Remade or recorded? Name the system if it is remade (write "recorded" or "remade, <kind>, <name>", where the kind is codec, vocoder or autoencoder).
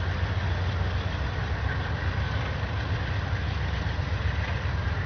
recorded